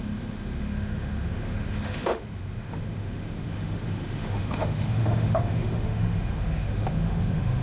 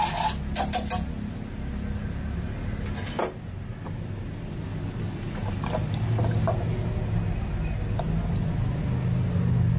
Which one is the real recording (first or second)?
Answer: second